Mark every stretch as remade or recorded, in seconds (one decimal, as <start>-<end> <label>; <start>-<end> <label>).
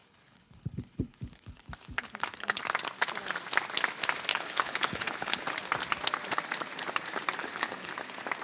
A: 0.0-2.6 remade; 2.6-4.3 recorded; 4.3-5.4 remade; 5.4-7.4 recorded; 7.4-7.9 remade; 7.9-8.4 recorded